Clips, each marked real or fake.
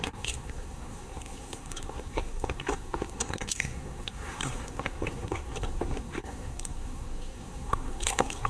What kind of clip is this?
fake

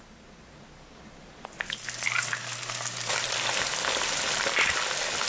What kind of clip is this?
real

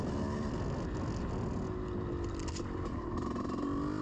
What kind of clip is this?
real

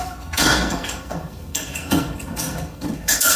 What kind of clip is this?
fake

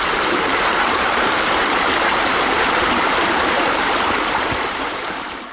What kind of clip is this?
fake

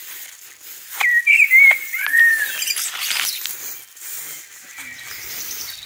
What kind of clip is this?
fake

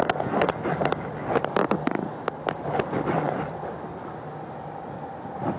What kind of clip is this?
real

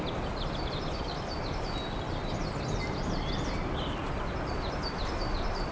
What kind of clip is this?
real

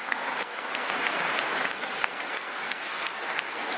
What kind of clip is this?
fake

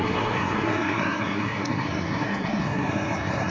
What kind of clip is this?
fake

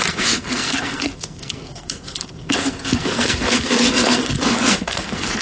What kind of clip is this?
fake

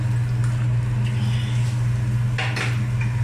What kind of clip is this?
real